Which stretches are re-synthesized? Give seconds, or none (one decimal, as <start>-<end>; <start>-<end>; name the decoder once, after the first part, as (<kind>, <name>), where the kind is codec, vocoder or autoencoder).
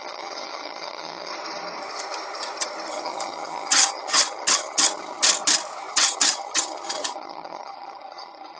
0.0-1.3 (vocoder, HiFi-GAN); 2.9-5.2; 5.9-8.6